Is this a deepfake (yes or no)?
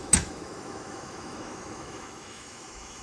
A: yes